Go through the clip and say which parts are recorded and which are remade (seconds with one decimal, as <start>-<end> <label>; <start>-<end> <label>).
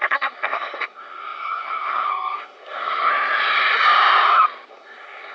0.0-3.1 remade; 3.1-4.7 recorded; 4.7-5.3 remade